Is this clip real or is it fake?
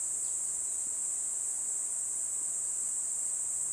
real